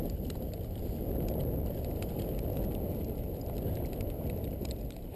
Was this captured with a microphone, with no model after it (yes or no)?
yes